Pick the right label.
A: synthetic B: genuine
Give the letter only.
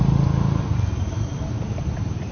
B